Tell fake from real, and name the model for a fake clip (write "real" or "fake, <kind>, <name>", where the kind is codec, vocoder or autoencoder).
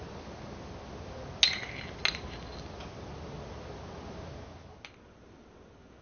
real